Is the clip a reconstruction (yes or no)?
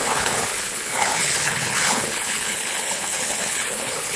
yes